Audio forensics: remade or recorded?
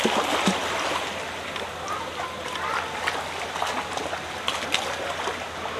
recorded